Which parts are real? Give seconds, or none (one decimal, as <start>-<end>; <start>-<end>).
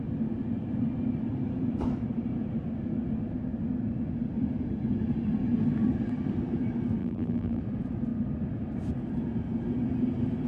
0.0-7.0; 7.6-10.5